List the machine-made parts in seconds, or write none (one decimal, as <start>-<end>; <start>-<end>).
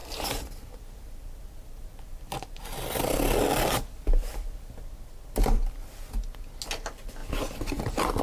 0.0-4.8